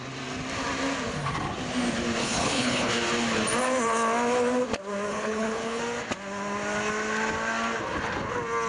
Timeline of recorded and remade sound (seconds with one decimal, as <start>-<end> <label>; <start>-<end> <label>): 0.0-2.2 recorded; 2.2-2.9 remade; 2.9-5.1 recorded; 5.1-5.8 remade; 5.8-8.7 recorded